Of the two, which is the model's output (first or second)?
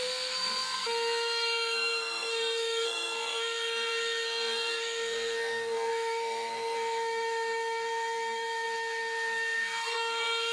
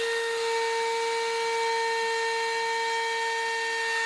first